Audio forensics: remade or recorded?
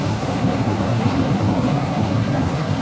remade